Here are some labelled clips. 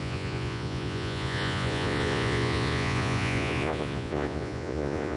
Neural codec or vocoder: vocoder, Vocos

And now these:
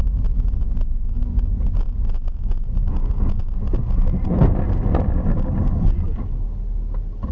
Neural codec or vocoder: none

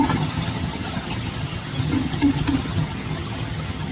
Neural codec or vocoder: vocoder, HiFi-GAN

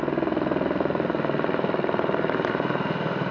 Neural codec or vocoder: none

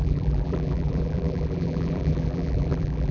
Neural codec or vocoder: vocoder, BigVGAN v2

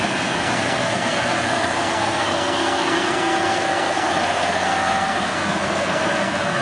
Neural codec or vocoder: codec, SNAC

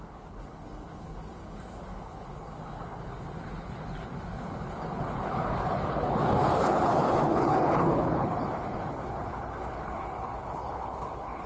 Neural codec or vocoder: codec, HILCodec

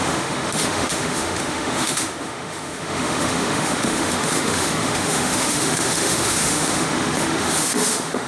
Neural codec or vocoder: autoencoder, DAC-VAE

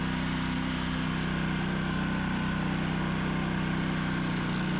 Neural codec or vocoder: none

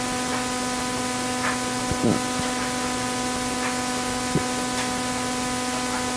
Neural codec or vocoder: none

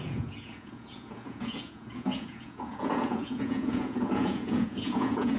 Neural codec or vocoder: vocoder, Vocos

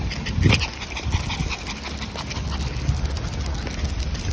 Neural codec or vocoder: none